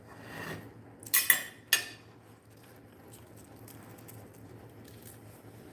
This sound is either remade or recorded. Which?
recorded